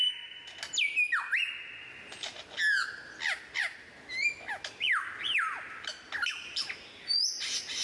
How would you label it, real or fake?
real